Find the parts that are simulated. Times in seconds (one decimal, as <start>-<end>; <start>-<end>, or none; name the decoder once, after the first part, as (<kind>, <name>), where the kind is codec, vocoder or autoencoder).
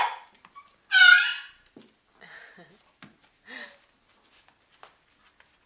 none